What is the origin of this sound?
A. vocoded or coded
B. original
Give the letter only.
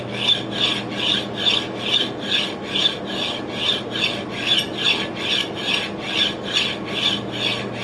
B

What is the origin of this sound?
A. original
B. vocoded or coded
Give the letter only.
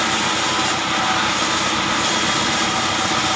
A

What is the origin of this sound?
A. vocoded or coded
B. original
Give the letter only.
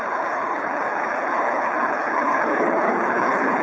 A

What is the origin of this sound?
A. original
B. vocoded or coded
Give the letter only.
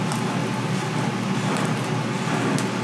A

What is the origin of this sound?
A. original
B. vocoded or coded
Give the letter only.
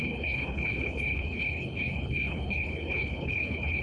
B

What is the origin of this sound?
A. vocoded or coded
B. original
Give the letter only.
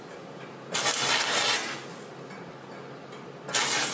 B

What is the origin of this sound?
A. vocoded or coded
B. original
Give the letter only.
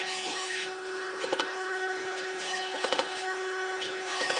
A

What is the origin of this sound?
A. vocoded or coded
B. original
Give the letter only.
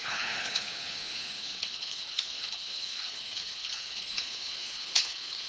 A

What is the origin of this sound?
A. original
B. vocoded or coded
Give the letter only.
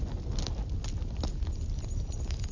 A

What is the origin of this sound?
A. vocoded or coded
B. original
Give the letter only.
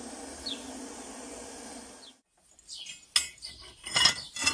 B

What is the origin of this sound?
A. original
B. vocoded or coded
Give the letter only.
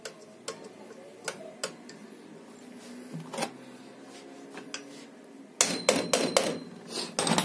A